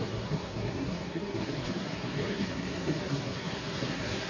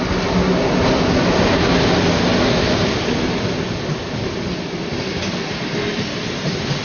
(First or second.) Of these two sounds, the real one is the second